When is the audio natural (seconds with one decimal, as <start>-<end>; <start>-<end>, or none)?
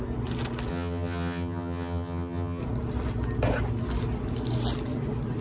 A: 0.0-0.7; 2.6-5.4